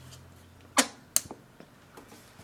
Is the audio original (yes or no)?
yes